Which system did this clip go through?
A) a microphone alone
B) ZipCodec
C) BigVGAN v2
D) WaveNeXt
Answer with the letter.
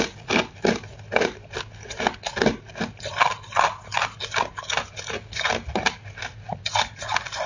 A